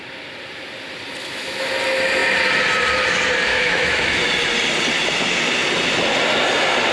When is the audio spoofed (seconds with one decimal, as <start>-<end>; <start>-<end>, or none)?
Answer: 1.2-1.7; 3.5-4.2